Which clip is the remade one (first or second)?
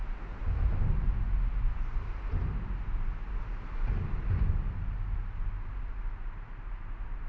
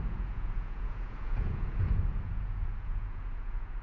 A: second